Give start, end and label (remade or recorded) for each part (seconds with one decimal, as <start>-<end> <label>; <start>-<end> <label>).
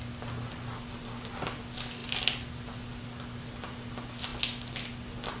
0.0-5.4 recorded